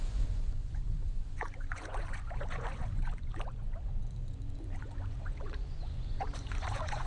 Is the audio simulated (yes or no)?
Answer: yes